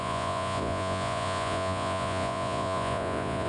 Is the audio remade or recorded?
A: remade